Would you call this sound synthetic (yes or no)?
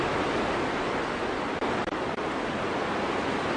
no